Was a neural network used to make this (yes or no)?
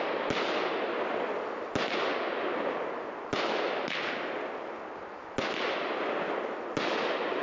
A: no